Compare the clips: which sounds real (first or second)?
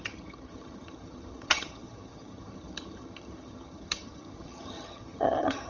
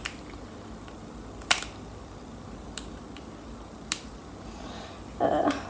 second